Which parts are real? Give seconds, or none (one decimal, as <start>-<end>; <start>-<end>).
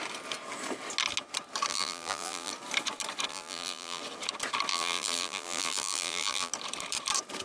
0.0-1.7; 2.5-3.3; 4.0-4.7; 6.5-7.4